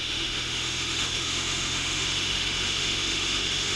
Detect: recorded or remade remade